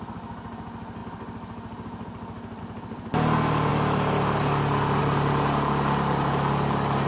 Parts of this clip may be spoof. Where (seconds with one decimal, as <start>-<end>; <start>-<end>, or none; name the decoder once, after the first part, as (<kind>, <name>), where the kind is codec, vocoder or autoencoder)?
none